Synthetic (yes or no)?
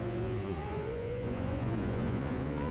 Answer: yes